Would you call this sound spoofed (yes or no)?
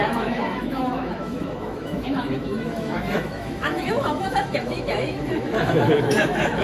yes